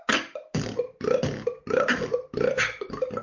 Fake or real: real